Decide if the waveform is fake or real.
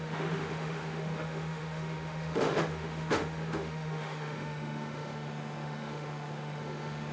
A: fake